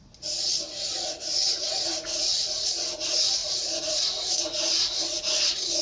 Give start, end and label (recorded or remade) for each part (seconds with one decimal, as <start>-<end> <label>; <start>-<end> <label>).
0.0-3.4 recorded; 3.4-5.0 remade; 5.0-5.8 recorded